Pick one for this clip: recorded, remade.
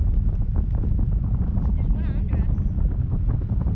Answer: recorded